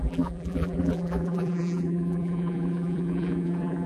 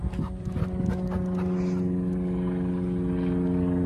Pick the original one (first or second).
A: second